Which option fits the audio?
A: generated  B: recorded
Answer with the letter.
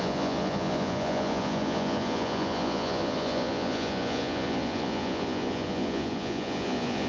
A